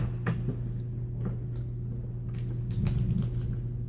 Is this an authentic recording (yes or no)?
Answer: yes